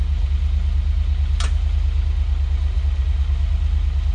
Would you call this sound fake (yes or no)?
no